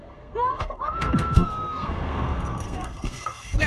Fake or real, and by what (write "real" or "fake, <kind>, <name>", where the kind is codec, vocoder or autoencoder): fake, codec, SNAC